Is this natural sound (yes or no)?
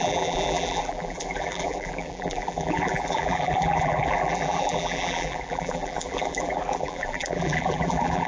no